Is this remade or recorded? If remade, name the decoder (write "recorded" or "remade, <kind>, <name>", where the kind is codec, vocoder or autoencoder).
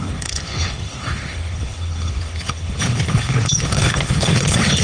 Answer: remade, codec, HILCodec